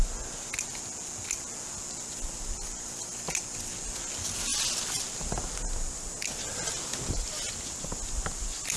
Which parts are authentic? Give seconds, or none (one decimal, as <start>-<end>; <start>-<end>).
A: 0.0-8.8